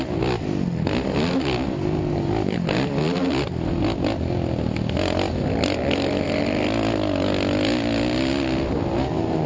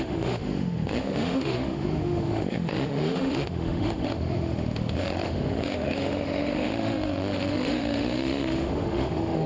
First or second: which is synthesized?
second